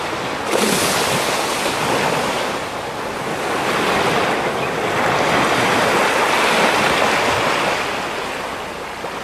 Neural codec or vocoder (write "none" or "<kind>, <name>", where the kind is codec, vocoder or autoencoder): none